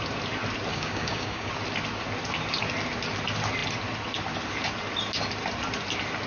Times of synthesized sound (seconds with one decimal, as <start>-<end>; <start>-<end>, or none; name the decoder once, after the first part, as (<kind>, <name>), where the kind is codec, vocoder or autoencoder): 0.7-1.5 (codec, DAC)